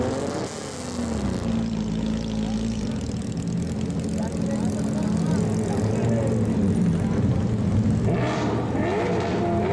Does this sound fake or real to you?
real